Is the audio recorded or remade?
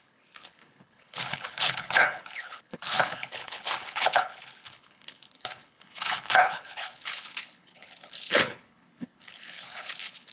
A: remade